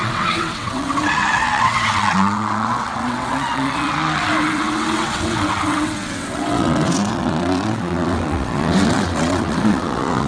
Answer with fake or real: fake